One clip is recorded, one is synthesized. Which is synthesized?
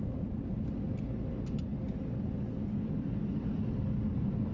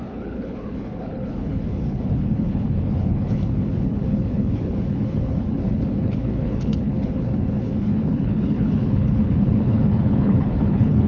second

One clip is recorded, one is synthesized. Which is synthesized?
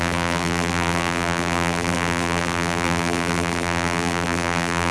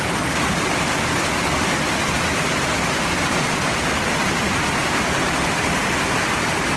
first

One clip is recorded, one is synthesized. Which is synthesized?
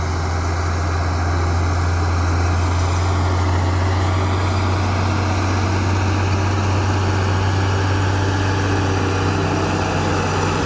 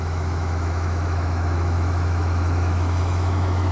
second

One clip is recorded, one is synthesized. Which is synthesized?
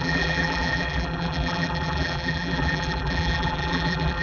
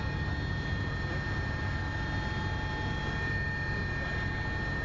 first